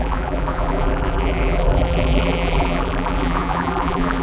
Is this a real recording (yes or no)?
no